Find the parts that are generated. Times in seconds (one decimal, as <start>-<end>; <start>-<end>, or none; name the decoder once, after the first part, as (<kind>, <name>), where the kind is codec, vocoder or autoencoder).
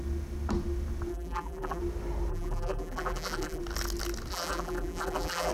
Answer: 1.1-1.8 (vocoder, BigVGAN v2); 2.3-3.6; 4.3-5.5